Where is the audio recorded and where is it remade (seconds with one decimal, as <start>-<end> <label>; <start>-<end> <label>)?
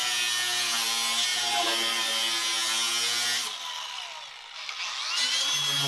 0.0-5.9 recorded